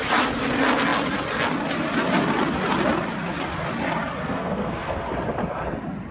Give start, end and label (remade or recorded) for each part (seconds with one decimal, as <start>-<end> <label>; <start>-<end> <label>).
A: 0.0-4.2 recorded; 4.2-5.0 remade; 5.0-6.1 recorded

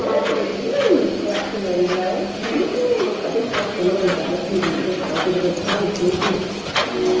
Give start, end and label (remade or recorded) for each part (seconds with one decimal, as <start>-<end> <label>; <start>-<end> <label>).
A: 0.0-7.2 recorded

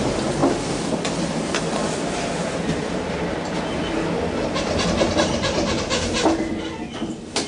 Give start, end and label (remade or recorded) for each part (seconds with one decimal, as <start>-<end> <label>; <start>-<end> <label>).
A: 0.0-7.5 recorded

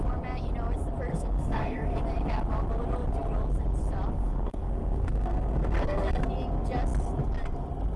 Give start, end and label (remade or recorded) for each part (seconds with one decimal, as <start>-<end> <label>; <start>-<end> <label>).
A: 0.0-1.1 recorded; 1.1-2.0 remade; 2.0-4.2 recorded; 4.2-6.3 remade; 6.3-8.0 recorded

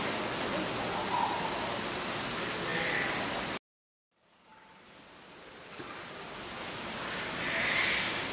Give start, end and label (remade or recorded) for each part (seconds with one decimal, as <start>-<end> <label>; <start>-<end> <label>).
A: 0.0-8.3 recorded

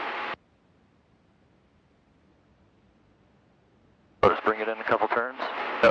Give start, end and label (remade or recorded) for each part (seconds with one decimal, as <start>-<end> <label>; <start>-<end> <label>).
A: 0.0-2.3 recorded; 2.3-4.4 remade; 4.4-5.9 recorded